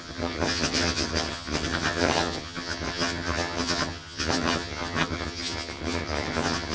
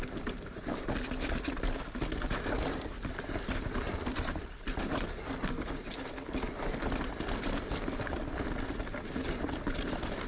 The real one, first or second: second